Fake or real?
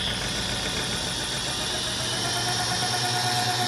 real